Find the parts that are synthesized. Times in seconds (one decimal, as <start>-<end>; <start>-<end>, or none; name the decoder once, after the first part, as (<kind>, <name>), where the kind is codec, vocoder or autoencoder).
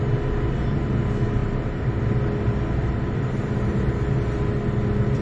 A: 1.4-2.0 (vocoder, BigVGAN v2); 2.8-3.7